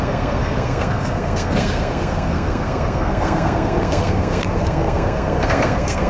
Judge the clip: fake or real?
fake